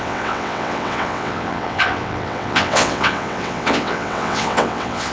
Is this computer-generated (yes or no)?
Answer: yes